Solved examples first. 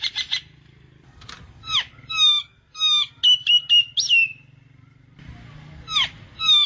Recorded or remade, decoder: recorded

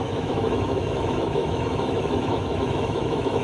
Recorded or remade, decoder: remade, autoencoder, DAC-VAE